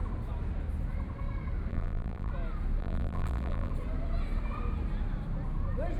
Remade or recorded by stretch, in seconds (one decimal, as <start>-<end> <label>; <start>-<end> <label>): 0.0-1.7 recorded; 1.7-2.3 remade; 2.3-2.8 recorded; 2.8-3.7 remade; 3.7-6.0 recorded